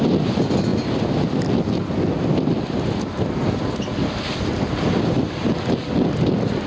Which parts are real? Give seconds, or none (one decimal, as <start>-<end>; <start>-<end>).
0.0-6.7